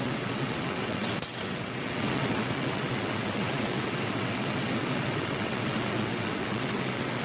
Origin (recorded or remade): remade